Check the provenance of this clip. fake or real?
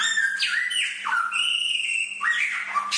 real